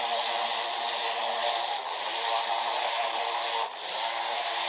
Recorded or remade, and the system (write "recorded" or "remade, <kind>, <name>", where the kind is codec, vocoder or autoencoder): recorded